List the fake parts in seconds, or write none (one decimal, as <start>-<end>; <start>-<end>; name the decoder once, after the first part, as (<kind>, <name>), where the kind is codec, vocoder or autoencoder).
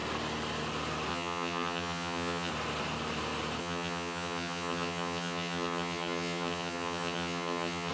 1.1-2.5 (vocoder, HiFi-GAN); 3.6-7.9